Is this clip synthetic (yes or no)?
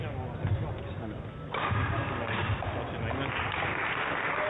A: no